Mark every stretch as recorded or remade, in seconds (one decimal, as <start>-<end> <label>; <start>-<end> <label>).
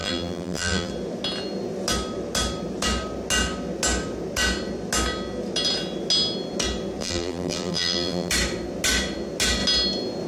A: 0.0-0.9 remade; 0.9-7.0 recorded; 7.0-8.3 remade; 8.3-10.3 recorded